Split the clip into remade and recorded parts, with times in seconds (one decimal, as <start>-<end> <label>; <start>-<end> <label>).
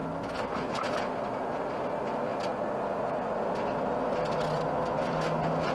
0.0-5.7 recorded